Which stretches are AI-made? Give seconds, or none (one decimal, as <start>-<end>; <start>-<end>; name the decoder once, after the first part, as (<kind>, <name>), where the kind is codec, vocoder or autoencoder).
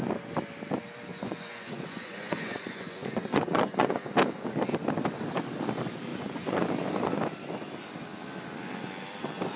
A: 1.1-4.1 (vocoder, Vocos); 6.1-6.7